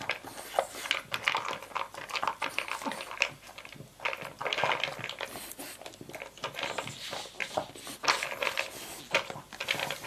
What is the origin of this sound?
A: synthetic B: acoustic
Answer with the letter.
B